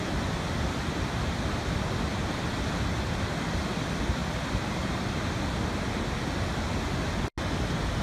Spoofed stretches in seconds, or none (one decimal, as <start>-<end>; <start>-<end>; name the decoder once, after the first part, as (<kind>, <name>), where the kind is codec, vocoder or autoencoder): none